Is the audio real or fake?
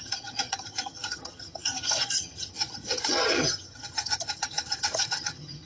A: fake